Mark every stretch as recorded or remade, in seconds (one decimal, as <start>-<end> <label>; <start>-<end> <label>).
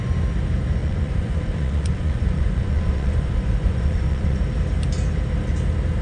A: 0.0-0.8 recorded; 0.8-4.4 remade; 4.4-6.0 recorded